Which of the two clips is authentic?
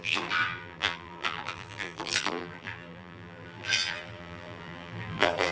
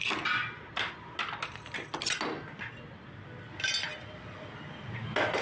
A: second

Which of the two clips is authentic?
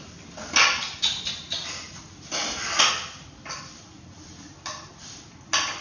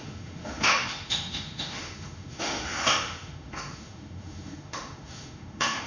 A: first